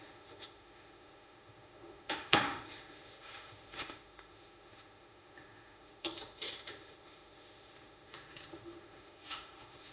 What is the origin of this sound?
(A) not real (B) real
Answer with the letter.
A